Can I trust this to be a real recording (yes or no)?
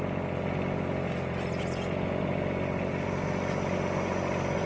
yes